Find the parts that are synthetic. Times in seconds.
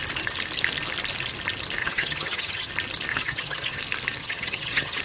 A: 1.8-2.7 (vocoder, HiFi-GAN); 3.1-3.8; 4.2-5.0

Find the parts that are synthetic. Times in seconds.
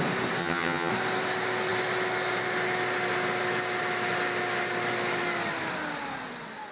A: 0.4-0.9 (vocoder, HiFi-GAN)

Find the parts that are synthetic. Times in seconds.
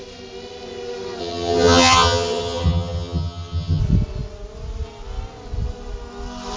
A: 1.2-3.8 (vocoder, HiFi-GAN)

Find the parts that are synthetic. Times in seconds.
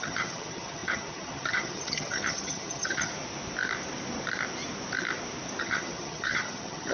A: 0.0-3.1 (vocoder, HiFi-GAN); 5.6-6.9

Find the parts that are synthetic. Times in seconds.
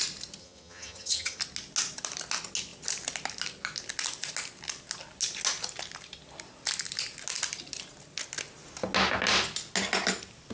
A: 0.4-1.4 (vocoder, HiFi-GAN)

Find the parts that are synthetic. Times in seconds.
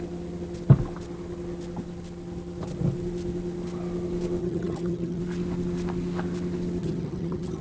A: 4.4-5.2 (vocoder, HiFi-GAN); 6.8-7.6